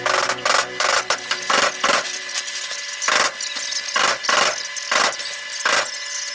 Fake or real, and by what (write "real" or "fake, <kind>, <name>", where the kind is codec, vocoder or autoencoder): real